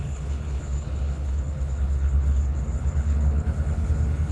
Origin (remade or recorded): remade